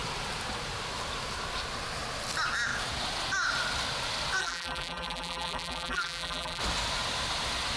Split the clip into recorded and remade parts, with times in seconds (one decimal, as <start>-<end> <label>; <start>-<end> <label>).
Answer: 0.0-4.4 recorded; 4.4-6.6 remade; 6.6-7.8 recorded

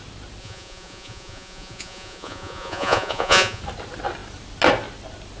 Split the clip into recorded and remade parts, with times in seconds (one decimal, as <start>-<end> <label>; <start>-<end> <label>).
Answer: 0.0-0.4 recorded; 0.4-3.6 remade; 3.6-5.4 recorded

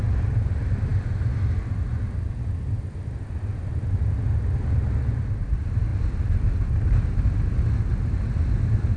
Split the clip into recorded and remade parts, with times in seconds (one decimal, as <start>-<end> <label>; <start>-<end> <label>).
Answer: 0.0-9.0 recorded

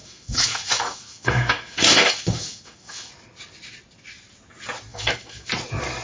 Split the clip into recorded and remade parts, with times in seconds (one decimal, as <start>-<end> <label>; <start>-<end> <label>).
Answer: 0.0-3.1 remade; 3.1-4.9 recorded; 4.9-5.5 remade; 5.5-6.0 recorded

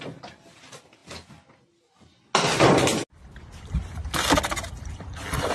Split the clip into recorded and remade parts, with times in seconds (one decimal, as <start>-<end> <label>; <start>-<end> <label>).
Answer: 0.0-5.5 recorded